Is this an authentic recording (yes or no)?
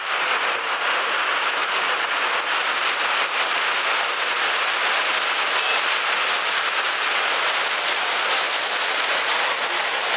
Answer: yes